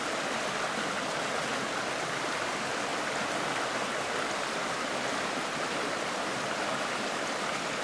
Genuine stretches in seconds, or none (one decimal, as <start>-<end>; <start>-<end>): 0.0-7.8